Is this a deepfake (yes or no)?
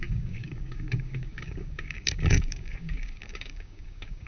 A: yes